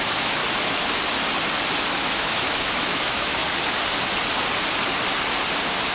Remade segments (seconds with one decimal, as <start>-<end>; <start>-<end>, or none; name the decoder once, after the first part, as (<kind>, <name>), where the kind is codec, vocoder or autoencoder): 0.0-0.4 (autoencoder, DAC-VAE); 2.1-3.4